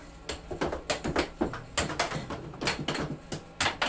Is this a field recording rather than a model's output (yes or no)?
yes